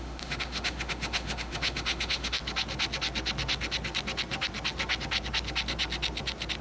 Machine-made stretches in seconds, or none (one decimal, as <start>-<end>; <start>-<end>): 0.0-2.4